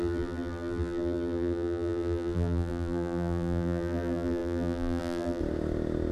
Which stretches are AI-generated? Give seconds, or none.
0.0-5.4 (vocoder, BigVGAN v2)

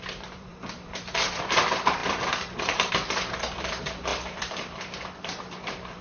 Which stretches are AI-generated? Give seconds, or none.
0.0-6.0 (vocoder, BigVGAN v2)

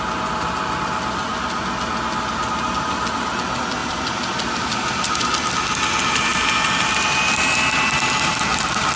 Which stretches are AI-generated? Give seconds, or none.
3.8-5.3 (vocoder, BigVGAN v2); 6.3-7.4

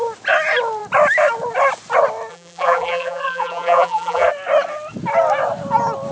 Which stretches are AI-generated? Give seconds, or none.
2.3-4.3 (vocoder, BigVGAN v2)

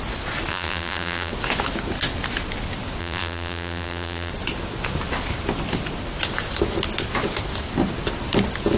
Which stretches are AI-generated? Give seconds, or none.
0.5-1.3 (vocoder, BigVGAN v2); 3.0-4.3

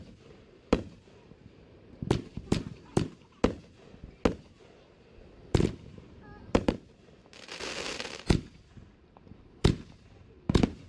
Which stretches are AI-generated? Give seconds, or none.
0.0-3.4 (vocoder, BigVGAN v2); 5.3-7.2; 7.9-10.9

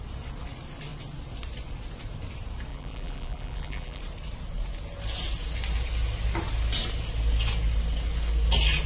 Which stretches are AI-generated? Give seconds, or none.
2.7-4.0 (vocoder, BigVGAN v2)